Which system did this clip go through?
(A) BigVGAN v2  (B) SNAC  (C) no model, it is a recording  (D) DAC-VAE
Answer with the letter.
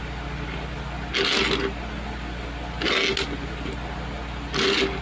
C